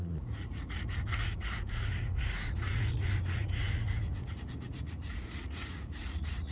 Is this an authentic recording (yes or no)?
no